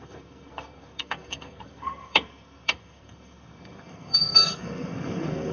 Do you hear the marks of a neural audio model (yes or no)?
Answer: yes